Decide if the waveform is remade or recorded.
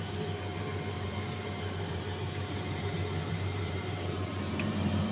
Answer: remade